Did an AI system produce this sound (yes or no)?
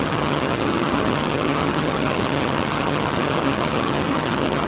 yes